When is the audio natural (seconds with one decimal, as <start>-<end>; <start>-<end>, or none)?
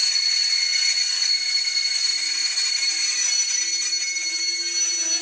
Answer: 1.3-5.2